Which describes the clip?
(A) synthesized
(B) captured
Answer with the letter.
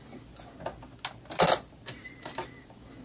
B